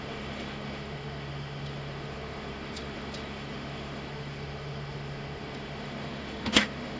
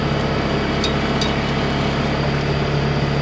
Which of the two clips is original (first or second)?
second